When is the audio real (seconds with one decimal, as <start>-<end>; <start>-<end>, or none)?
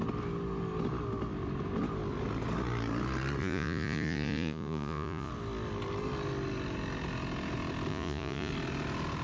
0.0-3.4; 5.3-7.9; 8.5-9.2